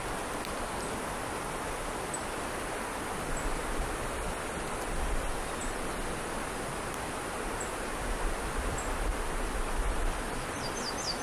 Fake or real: real